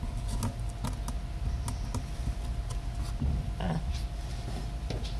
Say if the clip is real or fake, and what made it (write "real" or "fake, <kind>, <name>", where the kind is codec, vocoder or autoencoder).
real